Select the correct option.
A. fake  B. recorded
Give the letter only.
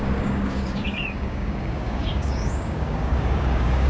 A